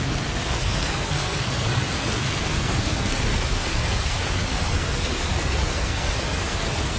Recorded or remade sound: remade